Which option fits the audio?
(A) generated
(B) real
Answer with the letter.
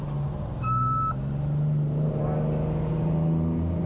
B